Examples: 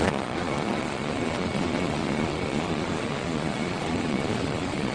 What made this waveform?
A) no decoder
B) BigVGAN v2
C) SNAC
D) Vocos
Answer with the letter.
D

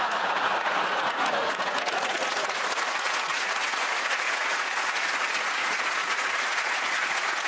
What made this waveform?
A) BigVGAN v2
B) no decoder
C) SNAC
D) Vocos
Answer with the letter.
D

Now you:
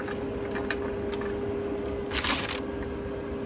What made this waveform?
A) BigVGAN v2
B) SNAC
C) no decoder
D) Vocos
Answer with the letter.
C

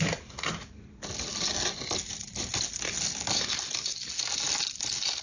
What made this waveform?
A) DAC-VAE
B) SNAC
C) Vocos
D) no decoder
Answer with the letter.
D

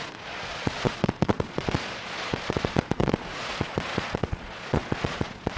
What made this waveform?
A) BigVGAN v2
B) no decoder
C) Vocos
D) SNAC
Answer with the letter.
C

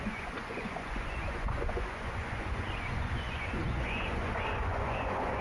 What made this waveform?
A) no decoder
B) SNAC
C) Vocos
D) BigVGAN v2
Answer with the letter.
C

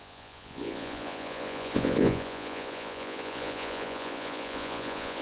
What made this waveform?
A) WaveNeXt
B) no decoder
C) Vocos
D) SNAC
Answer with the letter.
C